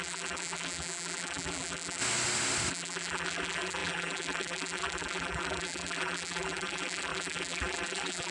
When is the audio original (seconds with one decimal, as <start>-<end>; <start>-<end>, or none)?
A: 2.0-2.7